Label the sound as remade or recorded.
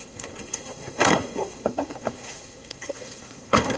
remade